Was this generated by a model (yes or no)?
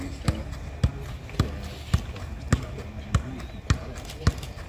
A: no